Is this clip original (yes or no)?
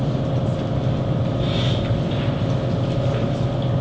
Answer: yes